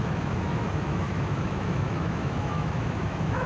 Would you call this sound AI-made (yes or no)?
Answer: yes